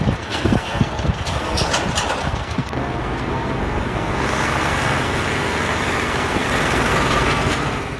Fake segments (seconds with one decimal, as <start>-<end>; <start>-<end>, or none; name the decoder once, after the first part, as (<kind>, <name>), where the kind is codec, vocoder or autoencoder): 0.0-1.7 (codec, SNAC); 2.2-8.0